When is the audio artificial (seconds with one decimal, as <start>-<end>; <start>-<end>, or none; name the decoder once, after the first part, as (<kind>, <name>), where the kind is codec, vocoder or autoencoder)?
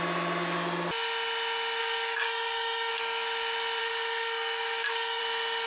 1.8-2.9 (codec, DAC); 3.8-5.2